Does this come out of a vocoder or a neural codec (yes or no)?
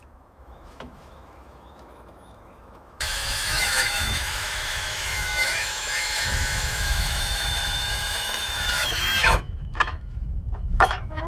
yes